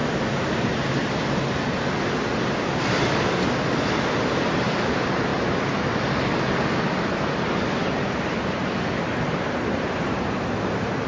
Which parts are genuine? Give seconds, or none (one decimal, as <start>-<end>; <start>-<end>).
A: 0.0-11.1